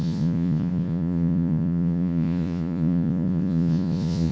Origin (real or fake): fake